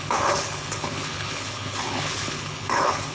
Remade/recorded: remade